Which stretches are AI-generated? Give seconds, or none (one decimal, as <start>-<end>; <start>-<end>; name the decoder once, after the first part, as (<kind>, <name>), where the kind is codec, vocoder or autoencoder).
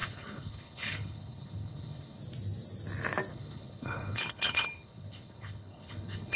0.0-2.2 (codec, HILCodec); 3.3-6.4